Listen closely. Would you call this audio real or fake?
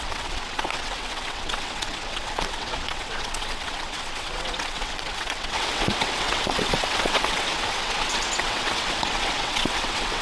fake